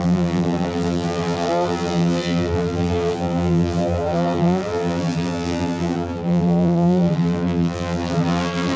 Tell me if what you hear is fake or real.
fake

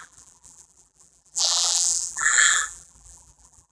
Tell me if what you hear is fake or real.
fake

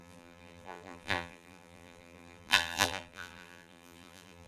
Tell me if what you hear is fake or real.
fake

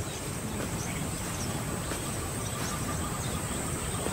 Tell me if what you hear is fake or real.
fake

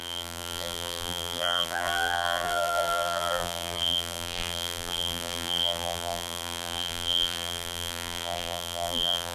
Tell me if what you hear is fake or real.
fake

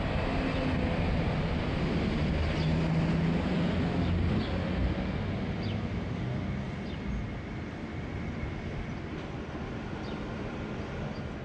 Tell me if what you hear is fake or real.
real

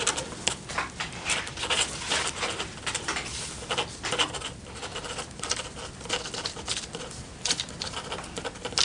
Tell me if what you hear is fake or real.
real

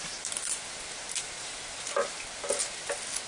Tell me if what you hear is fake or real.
real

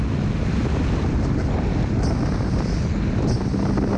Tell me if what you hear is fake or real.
real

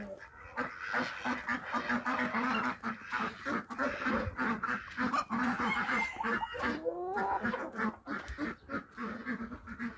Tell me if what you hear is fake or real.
real